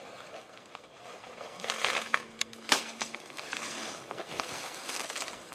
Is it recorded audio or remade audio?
remade